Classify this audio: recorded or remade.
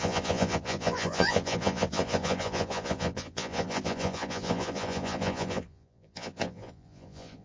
remade